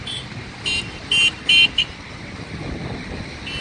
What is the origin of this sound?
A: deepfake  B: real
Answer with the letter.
B